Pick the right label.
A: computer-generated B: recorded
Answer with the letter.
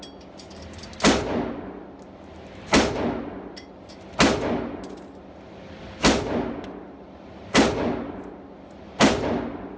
B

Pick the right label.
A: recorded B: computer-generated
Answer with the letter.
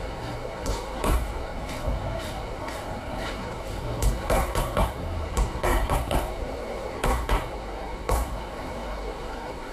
B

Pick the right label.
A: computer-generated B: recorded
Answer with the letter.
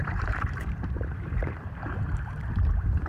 A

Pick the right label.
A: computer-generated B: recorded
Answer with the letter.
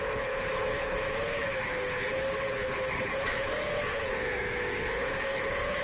A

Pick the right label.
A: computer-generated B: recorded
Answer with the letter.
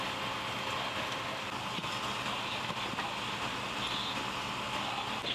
B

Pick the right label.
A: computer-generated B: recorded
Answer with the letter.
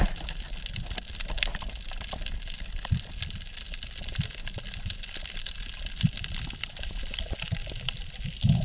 B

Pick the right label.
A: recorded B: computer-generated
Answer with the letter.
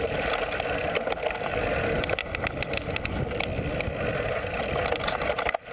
A